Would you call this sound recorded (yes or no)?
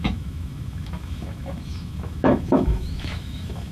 no